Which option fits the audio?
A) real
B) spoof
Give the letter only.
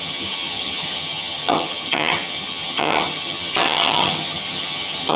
B